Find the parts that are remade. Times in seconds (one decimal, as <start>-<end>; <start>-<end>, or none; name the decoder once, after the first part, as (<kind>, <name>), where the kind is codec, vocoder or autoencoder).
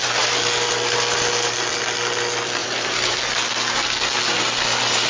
2.6-3.2 (vocoder, BigVGAN v2)